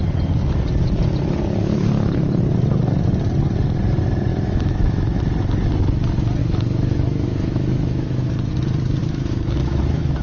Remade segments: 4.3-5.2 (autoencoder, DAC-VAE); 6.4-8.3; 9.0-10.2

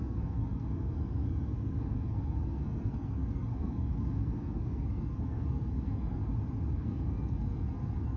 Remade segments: 0.0-6.2 (codec, SNAC); 6.7-8.2

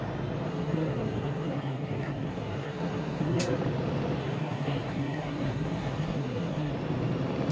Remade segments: 0.5-3.6 (codec, SNAC); 4.2-6.7

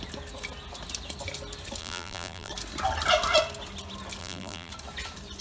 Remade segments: 1.8-2.5 (vocoder, BigVGAN v2); 4.2-4.7

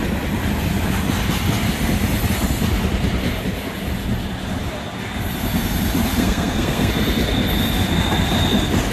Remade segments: 6.1-6.9 (codec, SNAC)

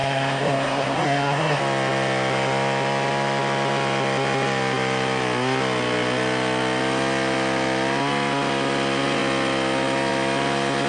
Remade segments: 0.0-1.6 (codec, SNAC)

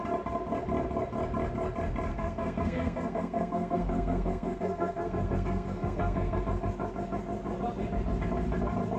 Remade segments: 2.1-6.4 (codec, SNAC)

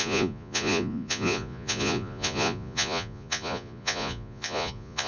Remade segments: 0.0-5.1 (vocoder, Vocos)